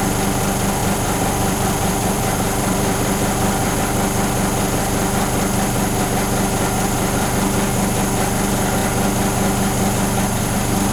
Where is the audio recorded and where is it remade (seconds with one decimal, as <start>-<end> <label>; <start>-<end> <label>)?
0.0-0.8 recorded; 0.8-3.8 remade; 3.8-10.9 recorded